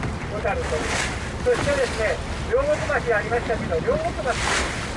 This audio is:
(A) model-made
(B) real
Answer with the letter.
B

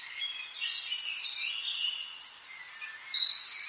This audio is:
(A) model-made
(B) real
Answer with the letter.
B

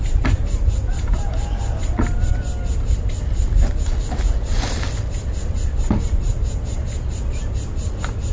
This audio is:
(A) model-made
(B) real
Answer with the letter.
B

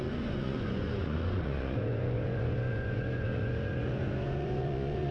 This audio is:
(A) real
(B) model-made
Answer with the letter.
B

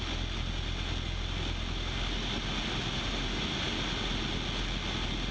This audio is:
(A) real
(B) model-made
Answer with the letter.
A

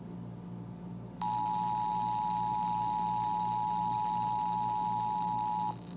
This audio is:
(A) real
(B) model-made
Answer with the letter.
A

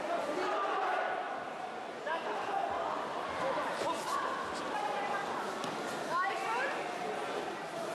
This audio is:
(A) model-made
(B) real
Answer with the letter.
B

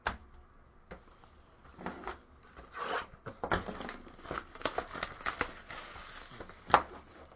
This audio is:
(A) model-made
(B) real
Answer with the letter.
B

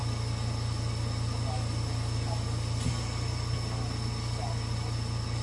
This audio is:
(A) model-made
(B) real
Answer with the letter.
B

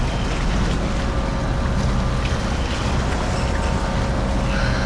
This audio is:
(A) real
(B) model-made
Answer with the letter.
A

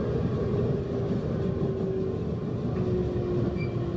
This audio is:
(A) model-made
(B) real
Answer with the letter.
B